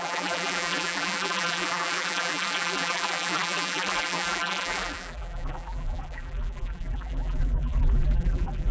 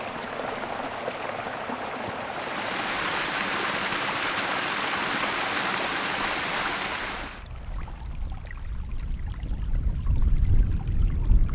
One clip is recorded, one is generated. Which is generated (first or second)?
first